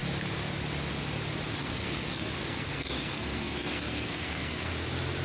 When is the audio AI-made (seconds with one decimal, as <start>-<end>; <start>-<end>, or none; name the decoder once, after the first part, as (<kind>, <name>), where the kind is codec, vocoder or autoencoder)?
1.6-4.7 (codec, SNAC)